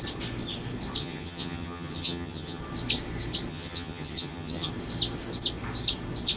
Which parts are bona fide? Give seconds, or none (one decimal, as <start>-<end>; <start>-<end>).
0.0-1.0; 2.6-3.5; 4.7-6.4